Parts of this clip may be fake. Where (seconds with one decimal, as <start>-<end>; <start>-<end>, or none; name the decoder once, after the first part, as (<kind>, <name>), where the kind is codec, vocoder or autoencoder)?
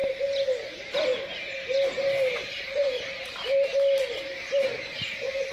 1.1-3.7 (vocoder, BigVGAN v2)